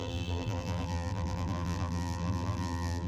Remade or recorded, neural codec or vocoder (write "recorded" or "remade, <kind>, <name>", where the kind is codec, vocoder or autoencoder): remade, vocoder, BigVGAN v2